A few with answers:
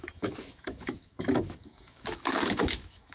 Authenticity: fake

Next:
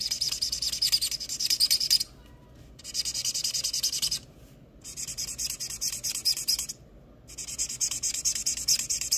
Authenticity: real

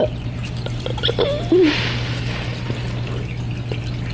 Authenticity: real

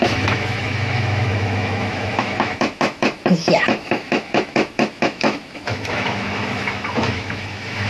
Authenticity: fake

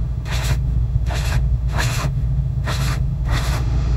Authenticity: fake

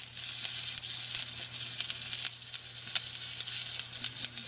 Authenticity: real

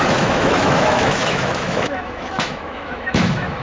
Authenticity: fake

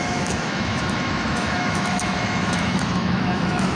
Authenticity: fake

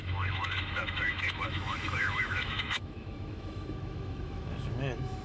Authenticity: fake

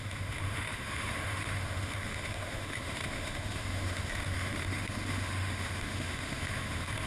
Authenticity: fake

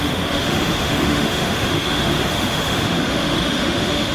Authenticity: fake